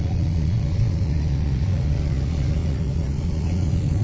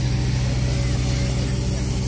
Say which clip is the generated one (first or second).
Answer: first